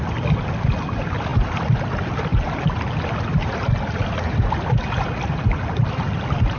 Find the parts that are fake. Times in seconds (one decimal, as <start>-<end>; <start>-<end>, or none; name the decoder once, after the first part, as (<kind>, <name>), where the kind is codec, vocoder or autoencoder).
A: none